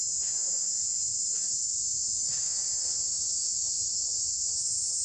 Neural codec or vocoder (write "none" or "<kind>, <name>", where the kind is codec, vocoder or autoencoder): autoencoder, DAC-VAE